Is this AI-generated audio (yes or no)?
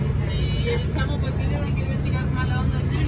no